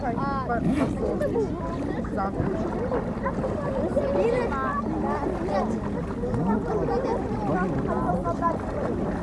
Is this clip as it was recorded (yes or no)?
yes